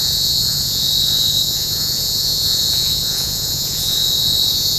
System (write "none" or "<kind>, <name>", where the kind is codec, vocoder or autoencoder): vocoder, Vocos